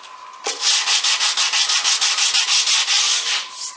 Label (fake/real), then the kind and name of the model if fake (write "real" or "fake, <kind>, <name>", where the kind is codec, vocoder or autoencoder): real